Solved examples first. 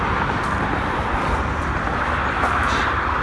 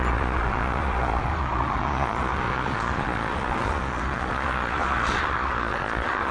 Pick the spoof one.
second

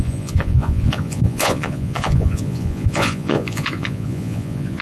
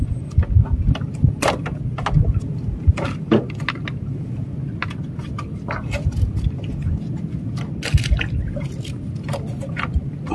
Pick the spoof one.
first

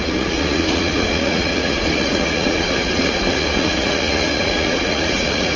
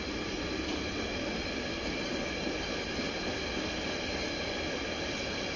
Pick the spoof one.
first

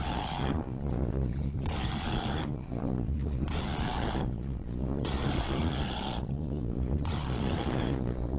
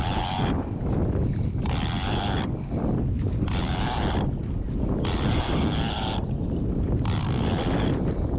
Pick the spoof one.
first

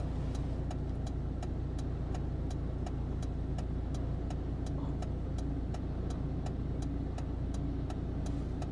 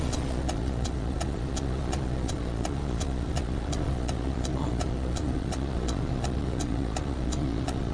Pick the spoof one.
second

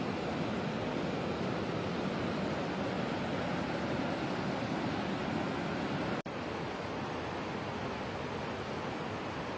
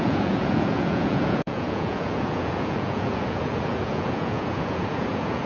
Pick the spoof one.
second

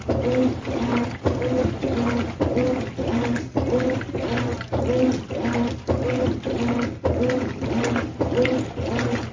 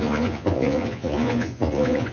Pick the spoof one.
second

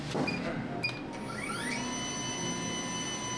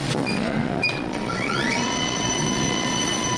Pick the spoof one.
second